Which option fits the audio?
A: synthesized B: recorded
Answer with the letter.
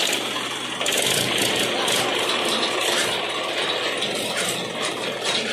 B